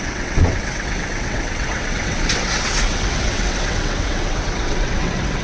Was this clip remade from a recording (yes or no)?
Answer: yes